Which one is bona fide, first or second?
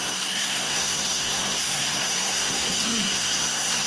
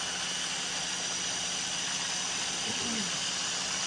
second